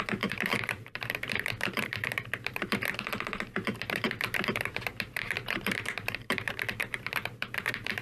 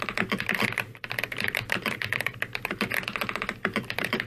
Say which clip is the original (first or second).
second